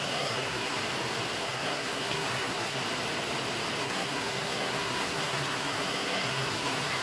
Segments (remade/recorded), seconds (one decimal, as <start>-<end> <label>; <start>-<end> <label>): 0.0-0.8 remade; 0.8-1.4 recorded; 1.4-2.8 remade; 2.8-3.8 recorded; 3.8-7.0 remade